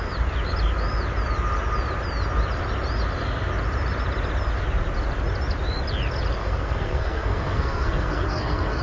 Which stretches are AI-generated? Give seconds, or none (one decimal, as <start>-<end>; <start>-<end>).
6.4-8.8